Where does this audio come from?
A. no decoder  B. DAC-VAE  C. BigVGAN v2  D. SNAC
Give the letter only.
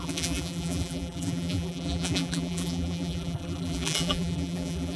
C